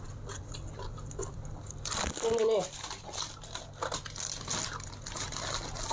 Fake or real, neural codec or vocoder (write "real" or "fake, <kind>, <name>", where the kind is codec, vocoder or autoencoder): real